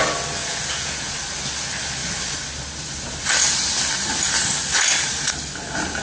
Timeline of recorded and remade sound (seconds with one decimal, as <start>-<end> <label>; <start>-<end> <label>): 0.0-0.4 recorded; 0.4-1.1 remade; 1.1-6.0 recorded